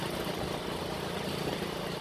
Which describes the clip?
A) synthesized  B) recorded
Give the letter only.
B